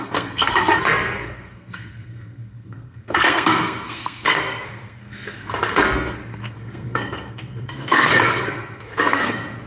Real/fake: fake